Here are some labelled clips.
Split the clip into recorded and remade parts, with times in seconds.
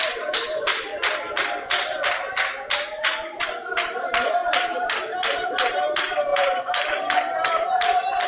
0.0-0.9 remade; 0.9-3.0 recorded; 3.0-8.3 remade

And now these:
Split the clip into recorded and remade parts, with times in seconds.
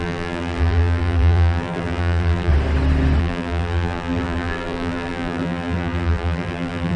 0.0-2.5 remade; 2.5-3.2 recorded; 3.2-7.0 remade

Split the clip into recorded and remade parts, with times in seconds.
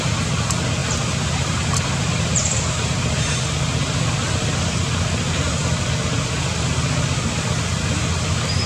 0.0-0.8 recorded; 0.8-3.4 remade; 3.4-8.7 recorded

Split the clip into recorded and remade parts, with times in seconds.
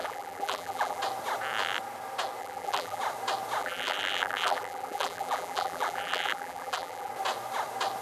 0.0-1.0 remade; 1.0-2.4 recorded; 2.4-3.0 remade; 3.0-3.6 recorded; 3.6-7.1 remade; 7.1-8.0 recorded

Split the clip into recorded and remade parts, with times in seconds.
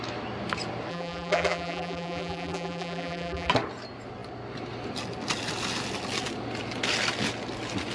0.0-0.9 recorded; 0.9-3.5 remade; 3.5-7.9 recorded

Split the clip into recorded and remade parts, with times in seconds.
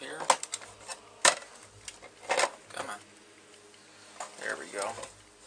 0.0-5.5 recorded